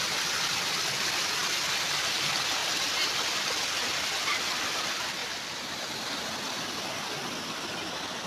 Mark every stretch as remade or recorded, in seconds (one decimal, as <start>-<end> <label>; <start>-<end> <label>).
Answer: 0.0-8.3 recorded